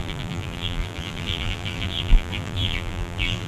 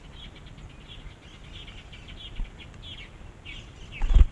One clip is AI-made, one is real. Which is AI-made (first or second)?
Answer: first